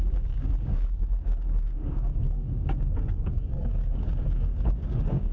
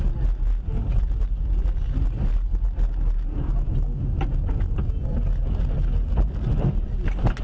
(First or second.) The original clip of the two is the second